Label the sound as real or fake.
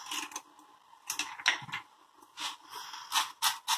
real